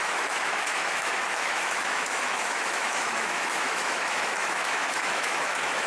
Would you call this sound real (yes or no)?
no